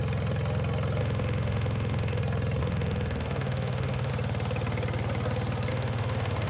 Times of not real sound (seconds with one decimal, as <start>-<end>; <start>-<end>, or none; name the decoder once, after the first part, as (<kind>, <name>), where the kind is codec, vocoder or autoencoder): 1.0-2.2 (autoencoder, DAC-VAE); 2.6-4.1; 5.7-6.5

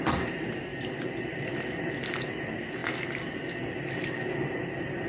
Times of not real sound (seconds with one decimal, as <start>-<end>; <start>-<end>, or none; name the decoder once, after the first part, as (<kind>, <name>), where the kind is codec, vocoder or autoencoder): none

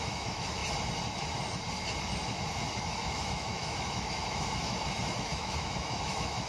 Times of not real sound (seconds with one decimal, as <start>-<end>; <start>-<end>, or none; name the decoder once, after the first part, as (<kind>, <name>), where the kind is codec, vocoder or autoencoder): 0.0-0.6 (autoencoder, DAC-VAE); 2.8-6.5

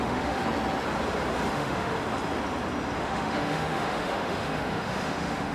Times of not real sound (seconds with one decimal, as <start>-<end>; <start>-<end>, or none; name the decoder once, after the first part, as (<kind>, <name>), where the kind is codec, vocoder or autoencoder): 0.0-0.4 (autoencoder, DAC-VAE); 1.5-1.9; 3.0-5.5

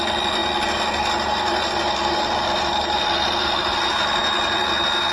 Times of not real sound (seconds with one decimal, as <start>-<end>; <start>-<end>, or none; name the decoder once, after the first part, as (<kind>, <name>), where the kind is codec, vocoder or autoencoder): none

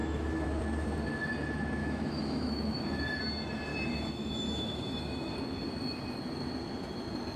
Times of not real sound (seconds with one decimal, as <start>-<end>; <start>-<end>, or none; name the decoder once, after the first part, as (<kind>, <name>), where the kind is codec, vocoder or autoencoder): 0.0-0.6 (autoencoder, DAC-VAE); 1.8-3.2; 3.7-5.3

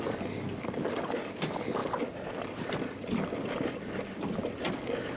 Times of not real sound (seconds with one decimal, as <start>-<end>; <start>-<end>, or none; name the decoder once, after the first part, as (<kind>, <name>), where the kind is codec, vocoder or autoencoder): none